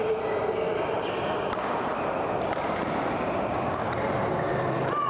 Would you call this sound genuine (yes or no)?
yes